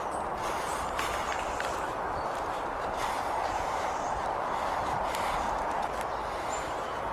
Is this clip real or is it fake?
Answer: real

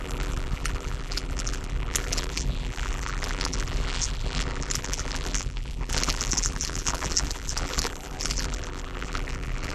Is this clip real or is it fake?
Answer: fake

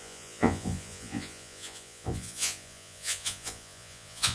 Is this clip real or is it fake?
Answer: fake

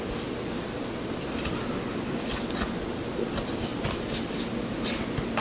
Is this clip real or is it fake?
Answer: real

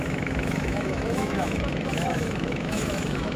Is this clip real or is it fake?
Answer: fake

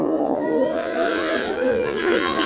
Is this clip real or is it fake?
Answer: fake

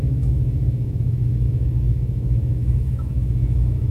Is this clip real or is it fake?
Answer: fake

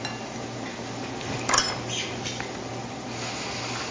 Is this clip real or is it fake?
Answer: real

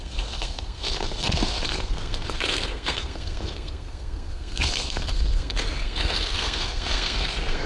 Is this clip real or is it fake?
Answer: fake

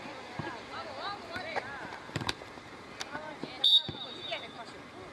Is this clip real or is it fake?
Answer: fake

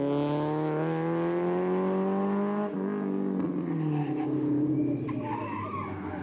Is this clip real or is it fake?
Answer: real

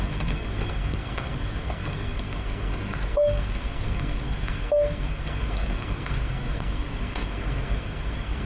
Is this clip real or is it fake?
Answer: fake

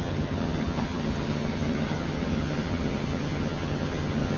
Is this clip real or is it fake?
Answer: fake